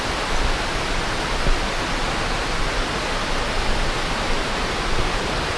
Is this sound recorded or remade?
recorded